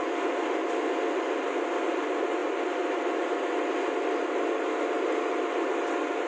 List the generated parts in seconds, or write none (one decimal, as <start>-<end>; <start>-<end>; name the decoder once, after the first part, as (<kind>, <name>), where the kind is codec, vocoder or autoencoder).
none